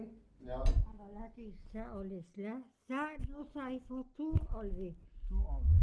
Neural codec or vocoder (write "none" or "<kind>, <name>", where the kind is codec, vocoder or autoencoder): none